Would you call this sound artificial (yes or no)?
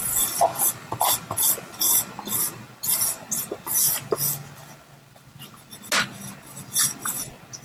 no